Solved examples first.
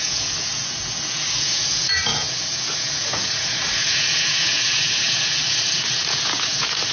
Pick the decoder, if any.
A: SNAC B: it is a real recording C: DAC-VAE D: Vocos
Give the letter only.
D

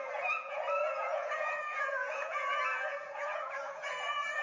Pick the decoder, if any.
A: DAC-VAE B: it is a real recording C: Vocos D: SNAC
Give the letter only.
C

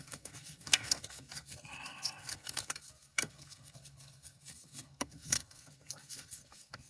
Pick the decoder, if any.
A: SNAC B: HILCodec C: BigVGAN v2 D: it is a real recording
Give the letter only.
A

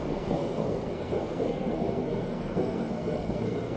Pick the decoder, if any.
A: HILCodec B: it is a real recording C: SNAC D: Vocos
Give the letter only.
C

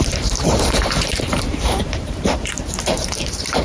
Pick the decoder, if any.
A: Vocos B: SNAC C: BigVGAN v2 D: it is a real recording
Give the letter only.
C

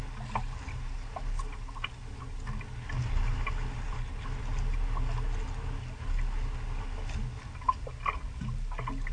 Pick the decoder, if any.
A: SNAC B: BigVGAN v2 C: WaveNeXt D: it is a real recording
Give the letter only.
D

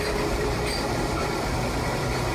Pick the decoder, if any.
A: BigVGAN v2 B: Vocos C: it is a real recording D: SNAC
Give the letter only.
A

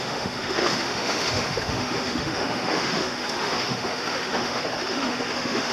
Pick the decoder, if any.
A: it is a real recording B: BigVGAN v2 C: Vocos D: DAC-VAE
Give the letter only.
D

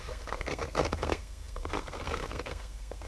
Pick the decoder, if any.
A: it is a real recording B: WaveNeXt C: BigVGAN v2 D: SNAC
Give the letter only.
D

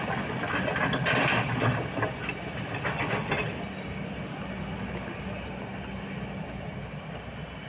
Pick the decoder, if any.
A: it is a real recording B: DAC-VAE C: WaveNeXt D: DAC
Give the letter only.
A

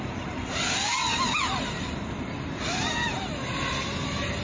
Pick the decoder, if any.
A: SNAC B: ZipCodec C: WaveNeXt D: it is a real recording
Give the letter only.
D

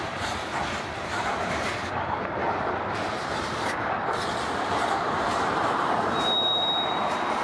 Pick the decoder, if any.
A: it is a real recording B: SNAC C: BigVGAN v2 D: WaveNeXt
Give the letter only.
C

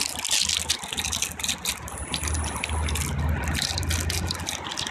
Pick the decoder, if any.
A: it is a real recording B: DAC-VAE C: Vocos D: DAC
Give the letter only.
A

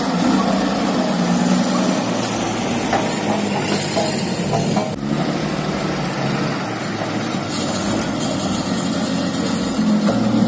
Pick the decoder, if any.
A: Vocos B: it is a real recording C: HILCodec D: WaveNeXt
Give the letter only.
B